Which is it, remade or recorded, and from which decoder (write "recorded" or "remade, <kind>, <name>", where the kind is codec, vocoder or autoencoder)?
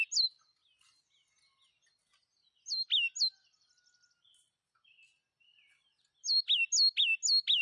recorded